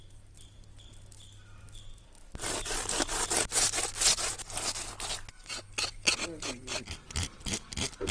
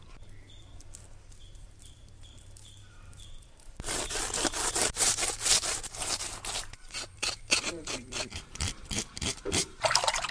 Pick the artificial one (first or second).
second